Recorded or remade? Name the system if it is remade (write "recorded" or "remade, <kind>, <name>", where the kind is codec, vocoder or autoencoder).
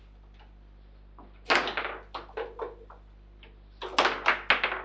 recorded